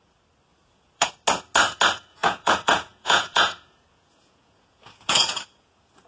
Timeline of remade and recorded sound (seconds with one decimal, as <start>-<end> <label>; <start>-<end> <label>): 0.0-0.5 recorded; 0.5-1.1 remade; 1.1-2.1 recorded; 2.1-6.1 remade